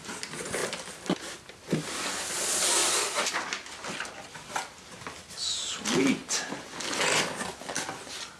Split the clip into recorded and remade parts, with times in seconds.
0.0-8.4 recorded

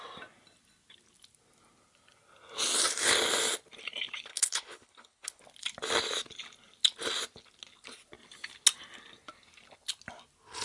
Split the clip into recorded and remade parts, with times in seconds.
0.0-4.3 recorded; 4.3-5.4 remade; 5.4-10.6 recorded

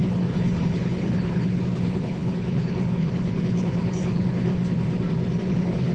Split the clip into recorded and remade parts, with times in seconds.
0.0-4.5 remade; 4.5-5.5 recorded; 5.5-5.9 remade